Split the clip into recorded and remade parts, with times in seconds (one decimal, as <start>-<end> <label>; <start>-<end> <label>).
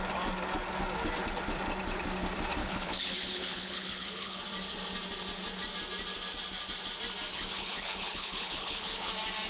0.0-2.6 recorded; 2.6-4.4 remade; 4.4-7.3 recorded; 7.3-9.1 remade; 9.1-9.5 recorded